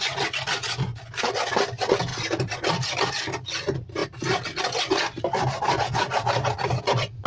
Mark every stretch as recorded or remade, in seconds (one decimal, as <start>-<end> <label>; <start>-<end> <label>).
0.0-7.3 recorded